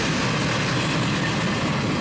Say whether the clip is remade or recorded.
recorded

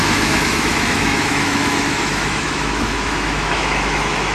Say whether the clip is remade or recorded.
remade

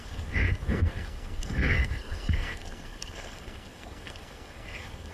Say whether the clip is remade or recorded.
remade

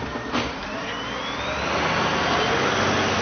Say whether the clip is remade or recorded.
recorded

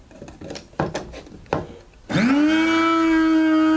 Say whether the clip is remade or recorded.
recorded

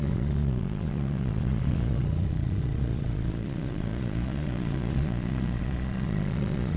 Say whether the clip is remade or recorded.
remade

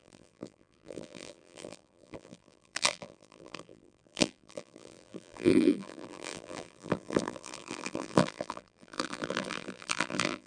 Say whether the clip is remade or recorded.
remade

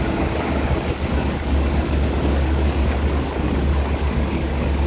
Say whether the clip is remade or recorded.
remade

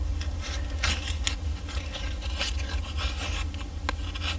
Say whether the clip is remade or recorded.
recorded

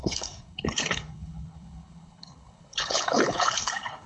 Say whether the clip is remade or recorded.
remade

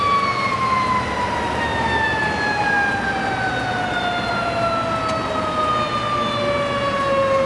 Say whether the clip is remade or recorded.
recorded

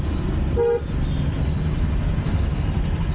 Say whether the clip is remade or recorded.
recorded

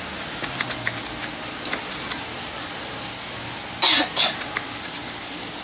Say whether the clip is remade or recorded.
recorded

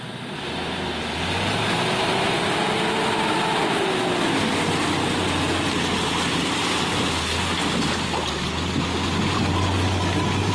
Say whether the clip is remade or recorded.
recorded